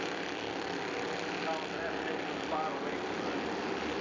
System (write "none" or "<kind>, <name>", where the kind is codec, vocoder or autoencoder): none